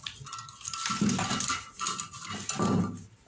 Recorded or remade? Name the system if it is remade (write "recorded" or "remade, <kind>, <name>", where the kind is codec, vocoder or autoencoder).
recorded